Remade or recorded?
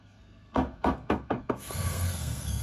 remade